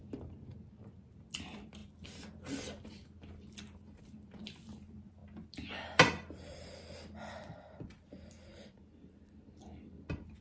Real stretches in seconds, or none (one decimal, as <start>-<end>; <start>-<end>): 0.0-10.4